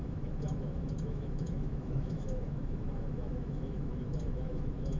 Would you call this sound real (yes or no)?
no